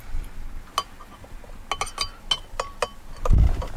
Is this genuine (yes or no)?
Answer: yes